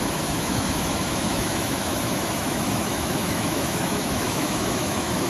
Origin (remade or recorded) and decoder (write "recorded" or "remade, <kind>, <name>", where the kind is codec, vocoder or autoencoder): remade, autoencoder, DAC-VAE